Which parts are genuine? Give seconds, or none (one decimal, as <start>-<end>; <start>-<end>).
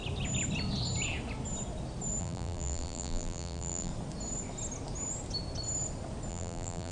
0.0-2.2; 3.9-6.3